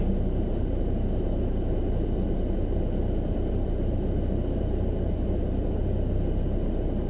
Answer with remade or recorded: recorded